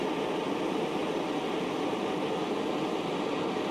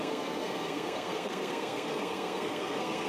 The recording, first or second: first